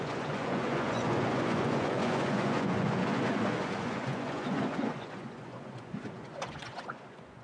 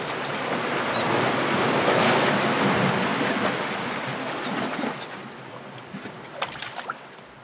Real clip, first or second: second